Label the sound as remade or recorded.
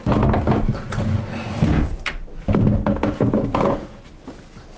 recorded